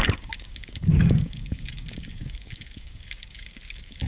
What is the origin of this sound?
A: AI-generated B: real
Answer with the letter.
A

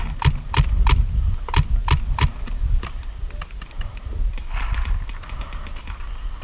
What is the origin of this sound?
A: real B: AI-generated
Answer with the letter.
A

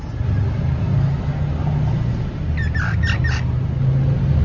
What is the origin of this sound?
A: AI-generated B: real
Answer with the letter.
B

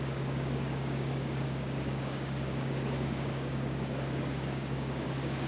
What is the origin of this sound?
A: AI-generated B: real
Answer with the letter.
A